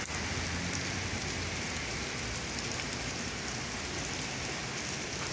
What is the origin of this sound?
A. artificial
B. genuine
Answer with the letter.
B